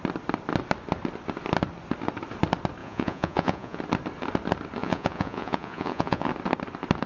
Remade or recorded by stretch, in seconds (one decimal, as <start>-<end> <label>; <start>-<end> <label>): 0.0-2.8 recorded; 2.8-3.8 remade; 3.8-4.8 recorded; 4.8-6.3 remade; 6.3-7.1 recorded